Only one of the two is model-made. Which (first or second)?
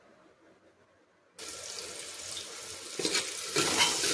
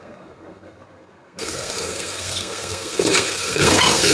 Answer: second